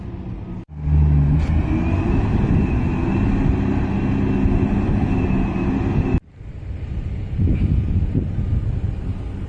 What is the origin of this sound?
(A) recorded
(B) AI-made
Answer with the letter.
A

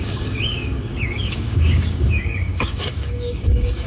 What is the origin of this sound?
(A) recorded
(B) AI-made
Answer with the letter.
B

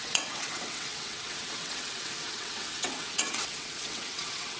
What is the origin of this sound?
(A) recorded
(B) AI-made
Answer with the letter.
B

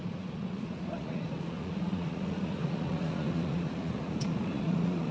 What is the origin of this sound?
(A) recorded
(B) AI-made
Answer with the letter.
B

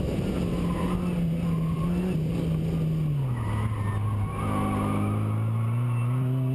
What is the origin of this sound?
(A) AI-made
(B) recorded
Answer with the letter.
B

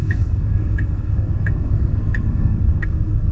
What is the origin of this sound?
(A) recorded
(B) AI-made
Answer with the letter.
B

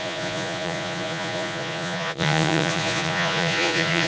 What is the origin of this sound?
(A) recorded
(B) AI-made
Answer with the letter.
B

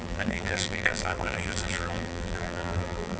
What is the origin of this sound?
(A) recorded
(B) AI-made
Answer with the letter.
B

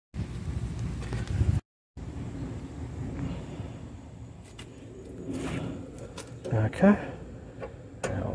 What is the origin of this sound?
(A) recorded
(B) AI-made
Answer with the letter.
A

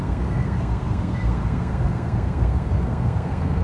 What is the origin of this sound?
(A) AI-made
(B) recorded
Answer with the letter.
A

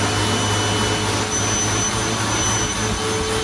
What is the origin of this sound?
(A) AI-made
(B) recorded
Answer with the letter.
B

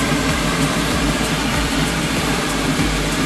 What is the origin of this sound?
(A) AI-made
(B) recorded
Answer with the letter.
A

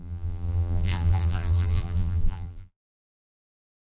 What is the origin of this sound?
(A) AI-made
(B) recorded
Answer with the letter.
A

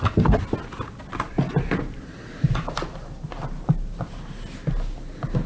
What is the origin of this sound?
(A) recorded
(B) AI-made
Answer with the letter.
A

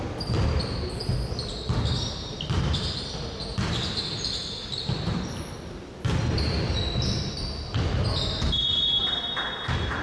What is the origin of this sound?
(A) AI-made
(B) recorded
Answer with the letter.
B